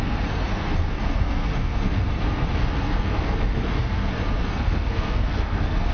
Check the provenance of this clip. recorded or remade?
remade